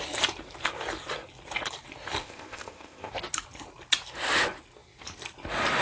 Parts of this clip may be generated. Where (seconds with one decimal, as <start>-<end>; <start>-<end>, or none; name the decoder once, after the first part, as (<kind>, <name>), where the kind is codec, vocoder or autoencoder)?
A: 2.2-3.1 (codec, ZipCodec)